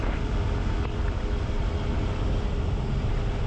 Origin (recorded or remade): remade